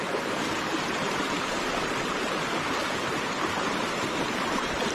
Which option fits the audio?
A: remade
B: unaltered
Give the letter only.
A